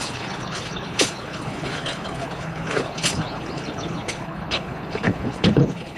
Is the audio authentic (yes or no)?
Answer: no